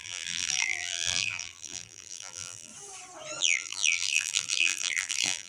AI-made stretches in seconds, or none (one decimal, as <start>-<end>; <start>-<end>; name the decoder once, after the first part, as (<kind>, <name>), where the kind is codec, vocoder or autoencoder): 0.0-2.7 (vocoder, BigVGAN v2); 3.4-5.5